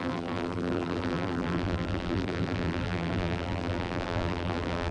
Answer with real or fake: fake